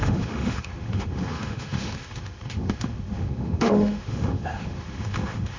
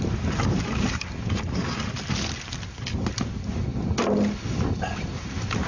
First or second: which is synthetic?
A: first